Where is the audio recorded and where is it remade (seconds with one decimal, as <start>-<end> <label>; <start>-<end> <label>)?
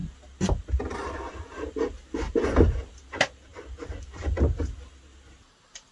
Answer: 0.0-5.9 recorded